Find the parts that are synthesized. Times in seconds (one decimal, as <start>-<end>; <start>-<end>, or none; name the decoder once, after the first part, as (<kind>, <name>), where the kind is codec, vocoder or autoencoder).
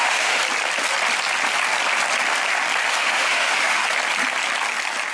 0.0-0.4 (autoencoder, DAC-VAE); 2.9-3.8